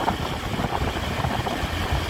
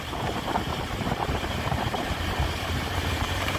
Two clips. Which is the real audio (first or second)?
first